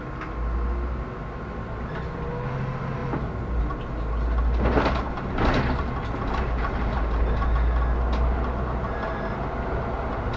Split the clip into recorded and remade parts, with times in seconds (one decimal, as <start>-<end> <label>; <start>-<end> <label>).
0.0-10.4 recorded